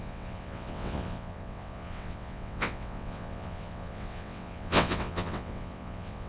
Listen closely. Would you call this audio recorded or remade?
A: remade